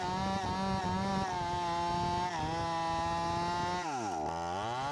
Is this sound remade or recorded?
recorded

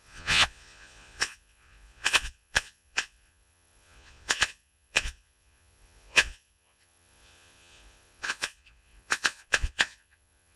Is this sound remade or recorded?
remade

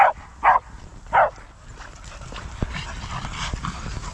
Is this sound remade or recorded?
recorded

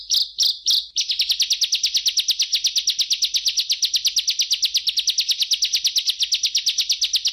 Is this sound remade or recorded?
recorded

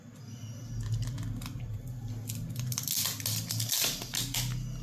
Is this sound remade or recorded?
recorded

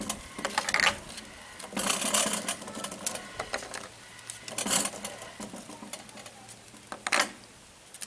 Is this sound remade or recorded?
recorded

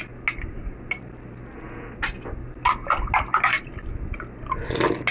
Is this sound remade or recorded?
recorded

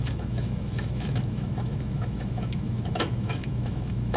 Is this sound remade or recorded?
remade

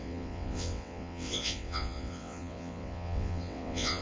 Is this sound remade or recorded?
remade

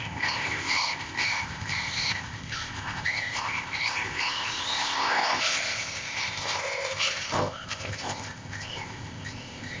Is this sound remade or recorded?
remade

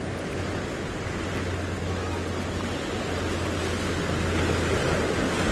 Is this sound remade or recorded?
recorded